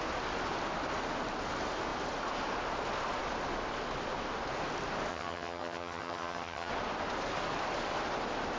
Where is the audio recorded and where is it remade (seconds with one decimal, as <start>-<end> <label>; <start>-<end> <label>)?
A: 0.0-5.1 recorded; 5.1-6.7 remade; 6.7-8.6 recorded